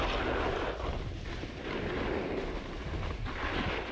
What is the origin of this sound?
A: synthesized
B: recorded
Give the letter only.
B